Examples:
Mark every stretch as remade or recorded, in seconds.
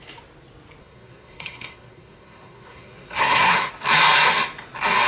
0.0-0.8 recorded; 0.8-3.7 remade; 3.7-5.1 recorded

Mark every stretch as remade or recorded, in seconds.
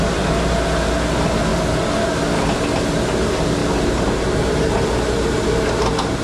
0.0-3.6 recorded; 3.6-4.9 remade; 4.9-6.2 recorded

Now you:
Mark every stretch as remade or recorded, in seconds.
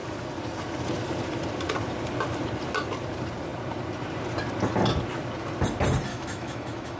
0.0-6.1 recorded; 6.1-7.0 remade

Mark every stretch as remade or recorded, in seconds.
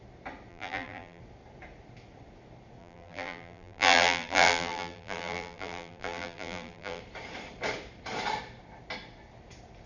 0.0-0.5 recorded; 0.5-1.2 remade; 1.2-2.8 recorded; 2.8-7.0 remade; 7.0-9.9 recorded